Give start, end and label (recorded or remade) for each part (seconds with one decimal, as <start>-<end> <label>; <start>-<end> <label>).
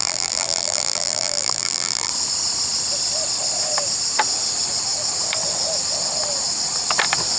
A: 0.0-2.1 remade; 2.1-7.4 recorded